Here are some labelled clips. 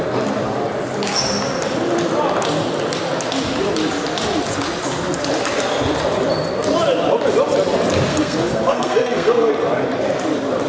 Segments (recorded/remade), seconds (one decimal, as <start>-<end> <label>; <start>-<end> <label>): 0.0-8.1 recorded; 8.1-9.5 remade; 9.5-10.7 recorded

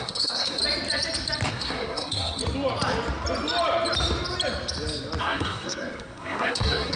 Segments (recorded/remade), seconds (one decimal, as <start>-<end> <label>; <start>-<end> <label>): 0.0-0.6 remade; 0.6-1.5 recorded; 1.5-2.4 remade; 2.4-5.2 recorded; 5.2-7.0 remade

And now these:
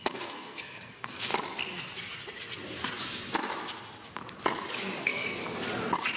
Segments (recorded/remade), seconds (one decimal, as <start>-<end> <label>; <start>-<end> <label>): 0.0-1.3 remade; 1.3-5.0 recorded; 5.0-5.4 remade; 5.4-6.2 recorded